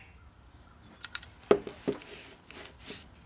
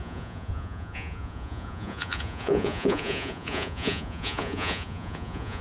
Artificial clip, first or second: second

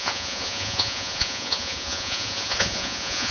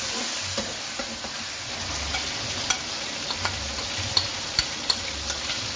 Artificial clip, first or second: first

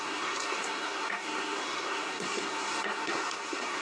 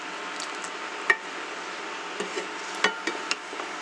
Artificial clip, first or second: first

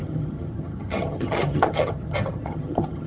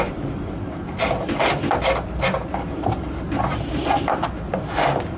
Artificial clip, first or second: first